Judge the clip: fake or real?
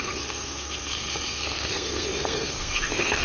fake